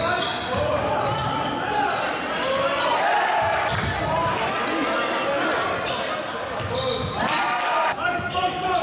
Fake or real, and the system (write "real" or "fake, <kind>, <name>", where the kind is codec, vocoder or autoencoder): real